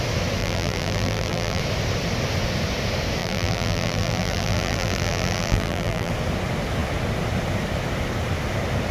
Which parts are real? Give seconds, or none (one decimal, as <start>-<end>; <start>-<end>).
0.0-0.4; 1.6-3.2; 6.1-8.9